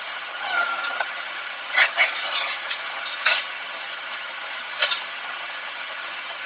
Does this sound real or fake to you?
fake